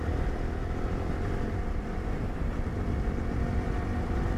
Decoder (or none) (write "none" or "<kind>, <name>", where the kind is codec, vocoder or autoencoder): vocoder, BigVGAN v2